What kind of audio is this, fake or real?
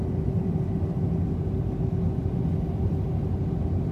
real